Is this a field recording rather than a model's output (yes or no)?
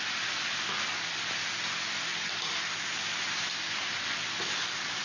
yes